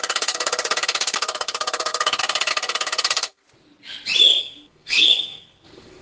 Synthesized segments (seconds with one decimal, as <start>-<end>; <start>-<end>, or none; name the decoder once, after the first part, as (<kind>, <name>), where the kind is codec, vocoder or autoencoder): 0.0-3.4 (codec, SNAC); 4.4-6.0